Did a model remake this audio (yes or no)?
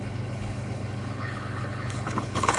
yes